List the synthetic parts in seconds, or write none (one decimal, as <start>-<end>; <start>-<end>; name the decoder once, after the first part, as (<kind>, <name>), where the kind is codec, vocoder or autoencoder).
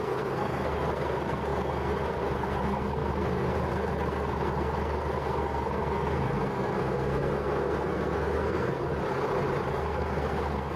0.0-8.8 (codec, SNAC); 9.7-10.8